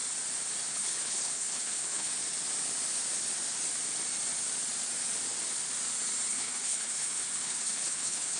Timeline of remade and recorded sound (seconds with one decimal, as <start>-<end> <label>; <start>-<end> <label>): 0.0-0.7 recorded; 0.7-2.1 remade; 2.1-6.3 recorded; 6.3-8.4 remade